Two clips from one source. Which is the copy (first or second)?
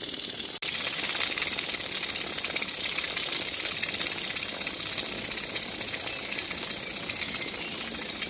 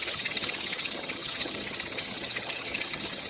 second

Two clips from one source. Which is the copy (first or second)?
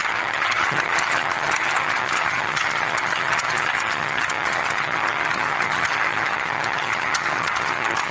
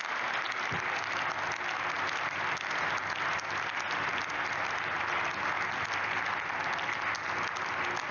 first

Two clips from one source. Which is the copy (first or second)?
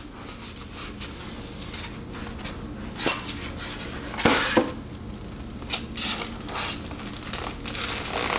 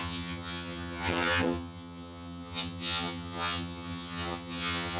second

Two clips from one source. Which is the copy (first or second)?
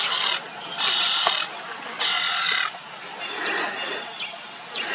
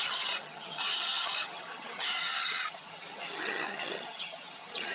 second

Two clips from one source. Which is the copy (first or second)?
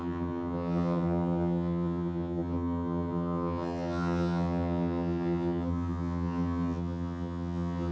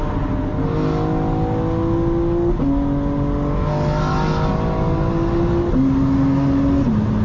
first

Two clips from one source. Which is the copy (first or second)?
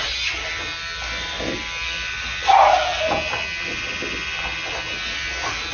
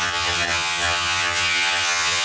second